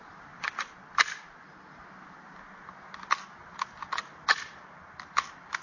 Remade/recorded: recorded